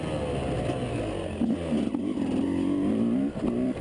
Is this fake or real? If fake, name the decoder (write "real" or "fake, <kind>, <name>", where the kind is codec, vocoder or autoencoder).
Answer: real